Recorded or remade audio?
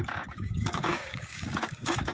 remade